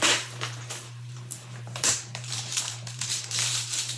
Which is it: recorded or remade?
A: remade